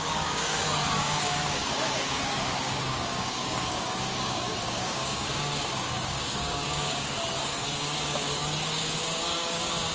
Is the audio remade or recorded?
remade